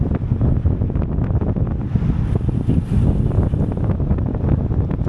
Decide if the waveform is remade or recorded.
recorded